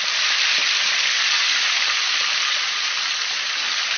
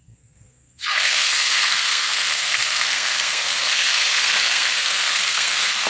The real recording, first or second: first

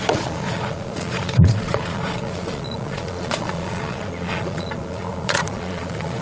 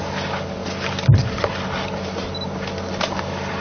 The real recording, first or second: second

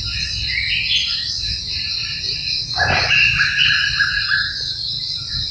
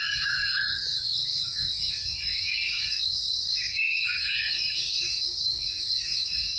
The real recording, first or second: first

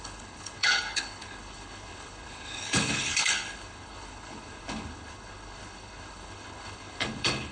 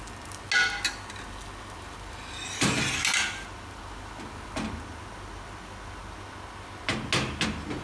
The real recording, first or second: second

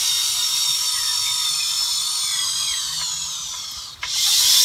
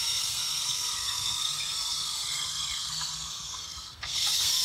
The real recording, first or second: first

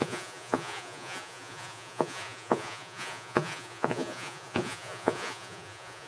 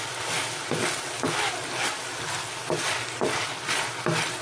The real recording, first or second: second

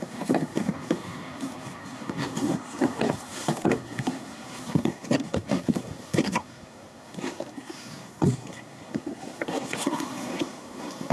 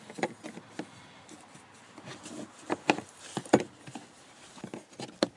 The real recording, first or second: second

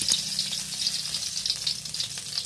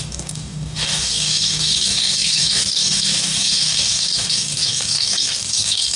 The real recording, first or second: first